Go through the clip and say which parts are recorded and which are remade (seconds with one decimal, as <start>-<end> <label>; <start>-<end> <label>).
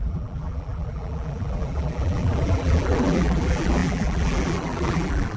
0.0-5.4 remade